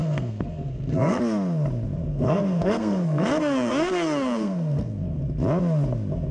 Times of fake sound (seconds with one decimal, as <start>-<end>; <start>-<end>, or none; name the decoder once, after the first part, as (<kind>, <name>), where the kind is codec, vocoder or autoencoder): 0.0-1.2 (codec, SNAC); 2.1-5.2